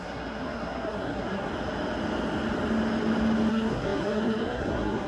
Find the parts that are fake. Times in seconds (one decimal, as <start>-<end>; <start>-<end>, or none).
0.0-1.5; 3.5-5.1